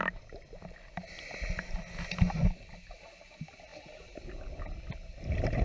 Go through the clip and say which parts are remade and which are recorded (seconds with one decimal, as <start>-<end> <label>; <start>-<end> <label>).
0.0-5.6 recorded